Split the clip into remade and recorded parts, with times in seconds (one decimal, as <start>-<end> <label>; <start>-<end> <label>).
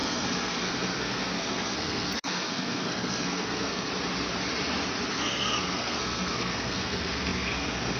0.0-3.9 remade; 3.9-5.1 recorded; 5.1-8.0 remade